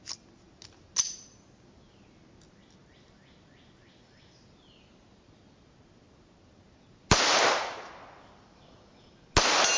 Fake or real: real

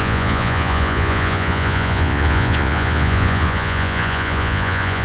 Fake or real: fake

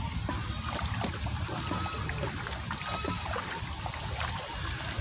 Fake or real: real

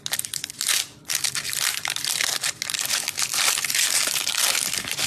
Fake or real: real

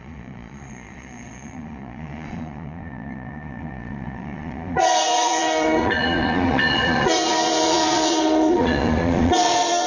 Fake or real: fake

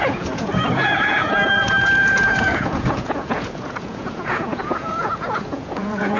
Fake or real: fake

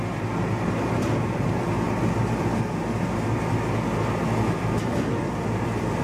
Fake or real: real